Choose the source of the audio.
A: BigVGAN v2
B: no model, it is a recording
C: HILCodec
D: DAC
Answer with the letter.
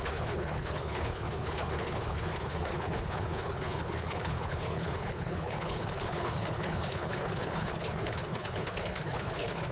C